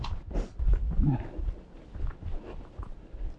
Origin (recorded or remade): recorded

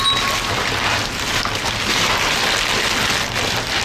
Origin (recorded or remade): recorded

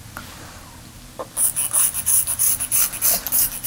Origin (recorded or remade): recorded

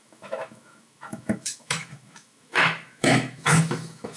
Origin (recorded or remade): remade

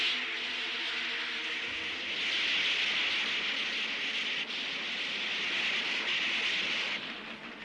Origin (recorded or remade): recorded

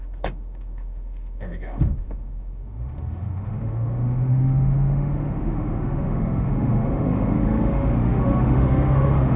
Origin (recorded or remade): remade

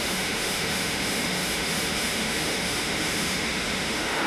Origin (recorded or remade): remade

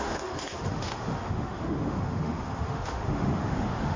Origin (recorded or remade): remade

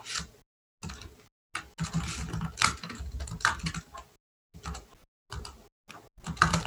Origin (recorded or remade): recorded